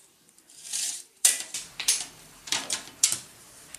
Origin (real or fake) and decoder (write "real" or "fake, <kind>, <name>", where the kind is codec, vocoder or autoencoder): fake, vocoder, BigVGAN v2